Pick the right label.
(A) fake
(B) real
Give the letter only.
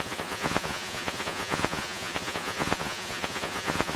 A